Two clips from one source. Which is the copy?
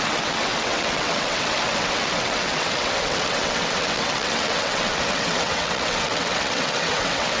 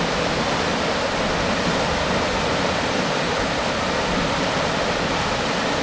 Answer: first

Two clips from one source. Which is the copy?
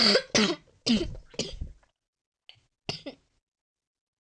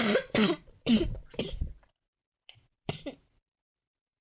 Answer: second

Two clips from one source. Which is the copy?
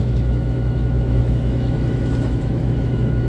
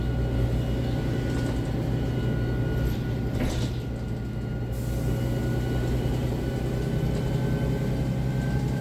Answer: first